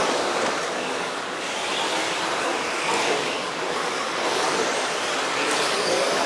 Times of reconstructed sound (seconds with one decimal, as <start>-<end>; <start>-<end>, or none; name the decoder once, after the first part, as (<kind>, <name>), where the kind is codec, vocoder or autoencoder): 0.0-1.6 (codec, DAC); 2.4-4.6; 5.3-6.3